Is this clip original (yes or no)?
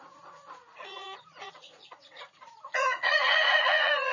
no